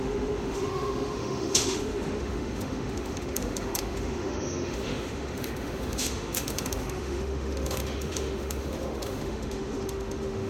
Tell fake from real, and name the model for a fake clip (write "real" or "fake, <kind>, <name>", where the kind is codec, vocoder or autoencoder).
fake, autoencoder, DAC-VAE